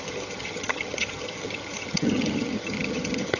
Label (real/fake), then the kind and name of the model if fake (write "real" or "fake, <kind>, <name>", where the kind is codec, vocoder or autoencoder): fake, vocoder, HiFi-GAN